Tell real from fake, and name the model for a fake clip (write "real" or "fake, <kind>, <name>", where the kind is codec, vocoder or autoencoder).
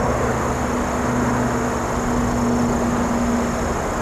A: real